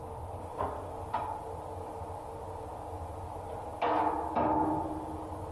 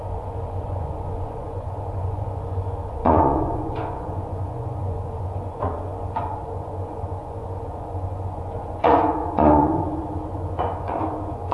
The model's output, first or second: second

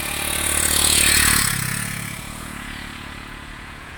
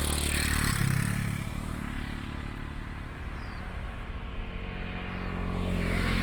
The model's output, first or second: first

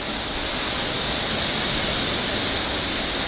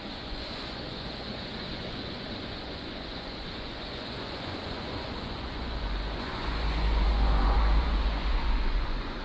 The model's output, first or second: second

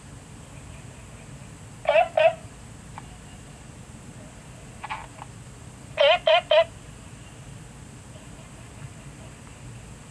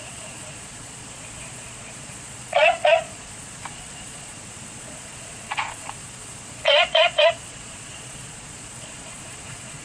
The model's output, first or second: second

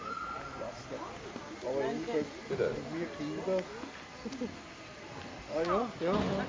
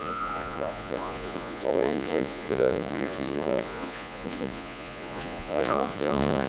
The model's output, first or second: second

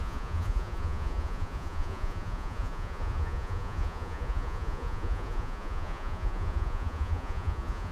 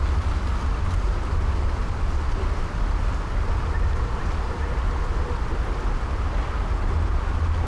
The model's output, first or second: first